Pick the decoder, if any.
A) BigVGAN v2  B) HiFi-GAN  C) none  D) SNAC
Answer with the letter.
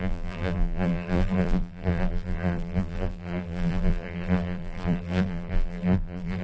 A